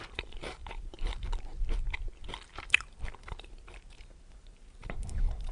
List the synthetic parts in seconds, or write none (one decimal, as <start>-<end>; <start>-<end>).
0.0-1.5; 3.2-5.5